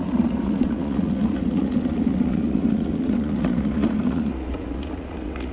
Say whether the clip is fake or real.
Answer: fake